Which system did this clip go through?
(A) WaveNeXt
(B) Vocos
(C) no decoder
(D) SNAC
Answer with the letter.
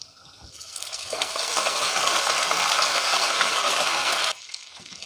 D